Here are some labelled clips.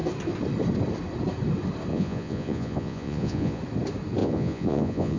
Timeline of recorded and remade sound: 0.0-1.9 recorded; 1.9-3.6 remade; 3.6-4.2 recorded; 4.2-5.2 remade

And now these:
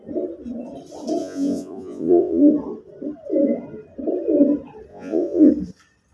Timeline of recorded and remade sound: 0.0-1.2 recorded; 1.2-2.5 remade; 2.5-4.9 recorded; 4.9-5.5 remade; 5.5-6.1 recorded

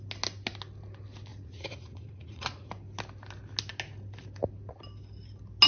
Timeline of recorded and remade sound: 0.0-1.3 recorded; 1.3-2.7 remade; 2.7-5.7 recorded

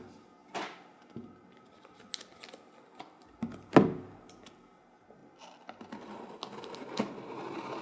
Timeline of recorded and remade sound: 0.0-7.8 recorded

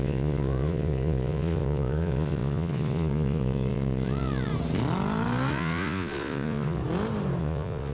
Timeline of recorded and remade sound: 0.0-4.5 remade; 4.5-5.5 recorded; 5.5-6.8 remade; 6.8-7.4 recorded; 7.4-7.9 remade

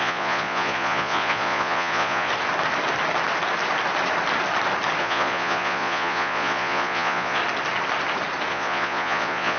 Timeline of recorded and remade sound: 0.0-2.3 remade; 2.3-5.0 recorded; 5.0-7.4 remade; 7.4-8.5 recorded; 8.5-9.6 remade

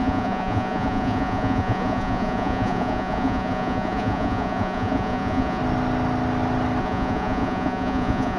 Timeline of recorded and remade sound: 0.0-5.6 remade; 5.6-6.8 recorded; 6.8-8.4 remade

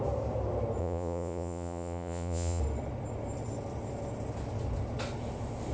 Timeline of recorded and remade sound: 0.0-0.8 recorded; 0.8-2.6 remade; 2.6-5.7 recorded